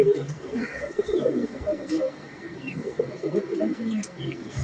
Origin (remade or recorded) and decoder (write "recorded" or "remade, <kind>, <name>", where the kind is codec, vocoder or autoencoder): remade, codec, SNAC